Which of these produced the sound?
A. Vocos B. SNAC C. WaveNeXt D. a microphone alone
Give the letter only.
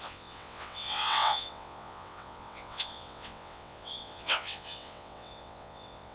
C